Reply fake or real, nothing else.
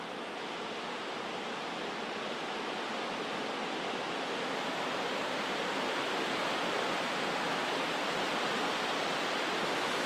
real